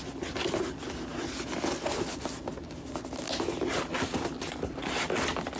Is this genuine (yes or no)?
yes